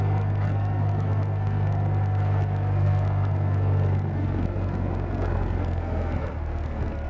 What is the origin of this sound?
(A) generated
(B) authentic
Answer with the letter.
A